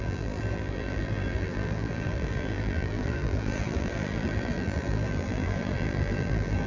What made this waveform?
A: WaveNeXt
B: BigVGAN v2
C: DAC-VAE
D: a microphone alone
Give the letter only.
B